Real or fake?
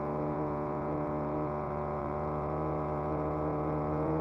fake